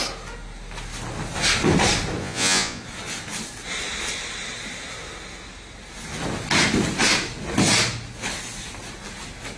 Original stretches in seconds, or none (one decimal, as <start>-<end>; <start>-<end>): 0.0-2.2; 2.8-9.6